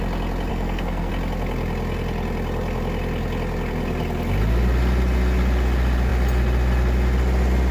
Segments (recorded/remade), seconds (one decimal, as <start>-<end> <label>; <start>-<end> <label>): 0.0-0.5 recorded; 0.5-1.1 remade; 1.1-7.7 recorded